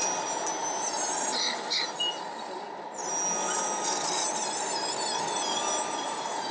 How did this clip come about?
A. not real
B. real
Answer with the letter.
B